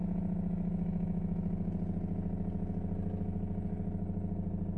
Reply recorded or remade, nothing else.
recorded